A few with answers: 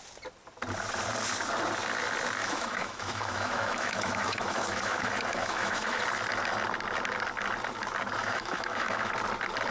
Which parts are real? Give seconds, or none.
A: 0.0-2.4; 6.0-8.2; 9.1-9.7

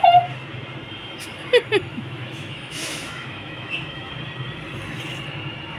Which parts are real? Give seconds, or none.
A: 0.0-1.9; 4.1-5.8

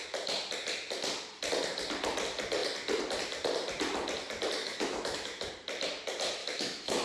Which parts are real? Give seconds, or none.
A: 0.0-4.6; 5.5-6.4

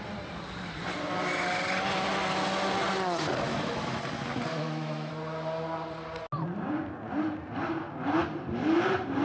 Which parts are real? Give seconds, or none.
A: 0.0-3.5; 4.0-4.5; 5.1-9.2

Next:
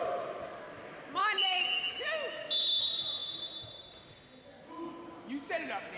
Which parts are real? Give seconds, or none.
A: 0.0-1.2; 2.5-6.0